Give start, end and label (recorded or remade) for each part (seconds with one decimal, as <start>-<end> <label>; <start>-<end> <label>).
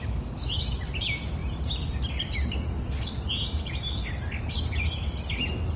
0.0-5.8 recorded